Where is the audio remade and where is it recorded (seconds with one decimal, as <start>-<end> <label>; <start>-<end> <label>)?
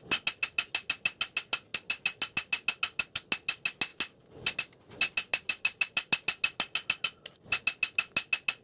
0.0-8.6 recorded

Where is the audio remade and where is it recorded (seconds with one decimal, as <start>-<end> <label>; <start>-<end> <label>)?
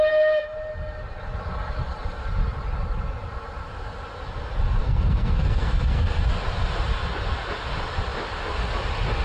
0.0-4.8 recorded; 4.8-6.2 remade; 6.2-9.2 recorded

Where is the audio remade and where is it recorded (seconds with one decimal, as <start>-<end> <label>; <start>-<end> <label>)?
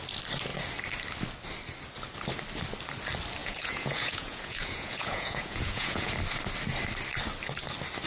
0.0-3.4 recorded; 3.4-6.1 remade; 6.1-8.1 recorded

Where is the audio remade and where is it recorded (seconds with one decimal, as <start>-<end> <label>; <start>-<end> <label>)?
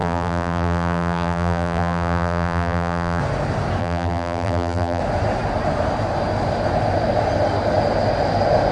0.0-3.2 remade; 3.2-3.8 recorded; 3.8-5.0 remade; 5.0-8.7 recorded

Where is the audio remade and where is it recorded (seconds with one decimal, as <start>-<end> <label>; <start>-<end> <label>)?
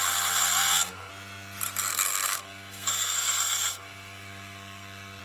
0.0-0.4 recorded; 0.4-1.1 remade; 1.1-1.9 recorded; 1.9-5.2 remade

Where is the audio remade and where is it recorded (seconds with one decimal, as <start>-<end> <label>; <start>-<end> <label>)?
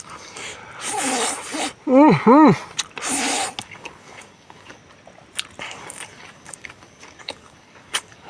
0.0-0.6 remade; 0.6-3.6 recorded; 3.6-4.8 remade; 4.8-5.6 recorded; 5.6-8.3 remade